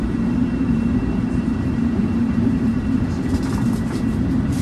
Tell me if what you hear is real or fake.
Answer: fake